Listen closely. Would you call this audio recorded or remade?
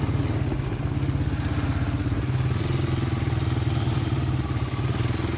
recorded